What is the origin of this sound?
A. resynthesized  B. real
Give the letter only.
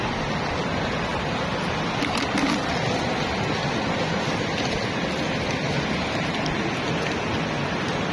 B